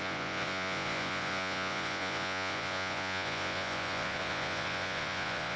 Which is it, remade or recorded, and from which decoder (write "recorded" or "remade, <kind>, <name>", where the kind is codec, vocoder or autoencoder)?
remade, vocoder, Vocos